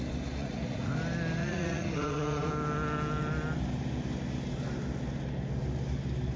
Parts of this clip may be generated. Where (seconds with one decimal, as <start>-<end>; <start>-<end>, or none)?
0.4-0.9; 1.4-2.5